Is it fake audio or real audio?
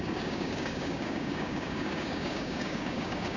fake